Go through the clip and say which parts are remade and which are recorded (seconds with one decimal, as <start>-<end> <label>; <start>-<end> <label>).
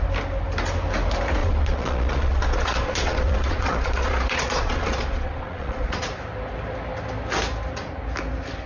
0.0-1.4 recorded; 1.4-6.1 remade; 6.1-8.7 recorded